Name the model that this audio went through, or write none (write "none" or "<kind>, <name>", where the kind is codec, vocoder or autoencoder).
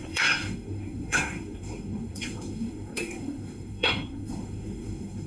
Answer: codec, SNAC